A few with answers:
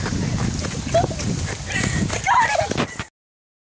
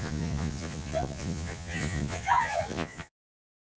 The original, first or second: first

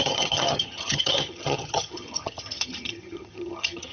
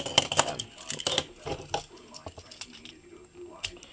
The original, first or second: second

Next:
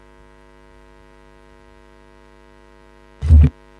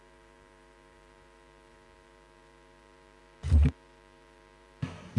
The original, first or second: first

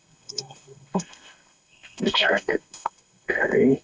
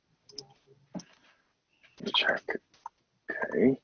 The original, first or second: second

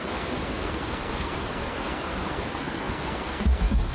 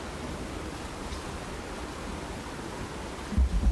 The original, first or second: second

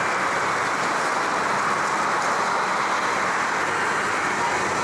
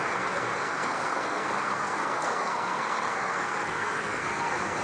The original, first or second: first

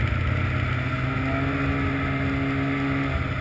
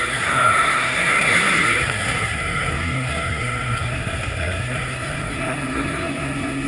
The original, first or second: first